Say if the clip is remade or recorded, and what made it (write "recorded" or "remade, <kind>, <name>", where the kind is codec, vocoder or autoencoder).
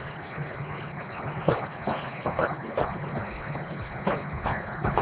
remade, codec, HILCodec